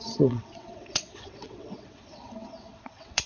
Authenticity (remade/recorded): remade